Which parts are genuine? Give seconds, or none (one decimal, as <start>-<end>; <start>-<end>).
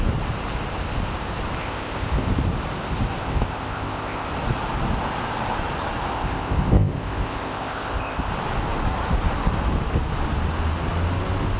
0.0-1.6; 2.3-3.2; 4.3-6.1; 8.3-11.6